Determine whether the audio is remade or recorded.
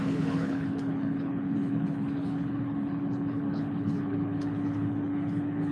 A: remade